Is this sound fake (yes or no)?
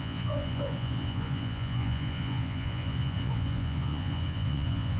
yes